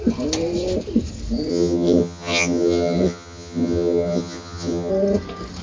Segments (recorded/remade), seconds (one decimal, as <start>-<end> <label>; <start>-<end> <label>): 0.0-1.5 recorded; 1.5-4.9 remade; 4.9-5.6 recorded